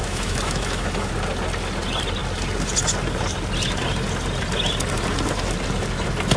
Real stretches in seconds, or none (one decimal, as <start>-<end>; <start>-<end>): 1.1-6.4